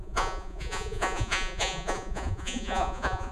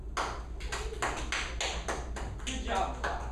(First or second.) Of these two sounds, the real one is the second